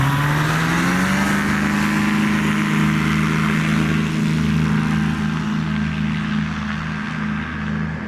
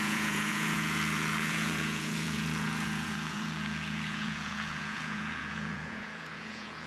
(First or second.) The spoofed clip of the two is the second